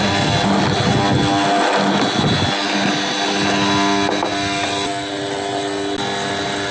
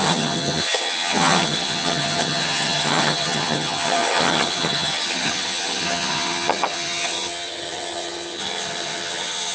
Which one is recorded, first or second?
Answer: first